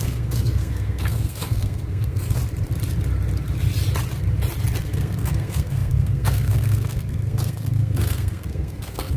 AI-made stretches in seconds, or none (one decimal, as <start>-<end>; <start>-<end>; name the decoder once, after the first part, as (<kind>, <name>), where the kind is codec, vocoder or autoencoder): 0.0-2.4 (codec, SNAC); 4.8-9.2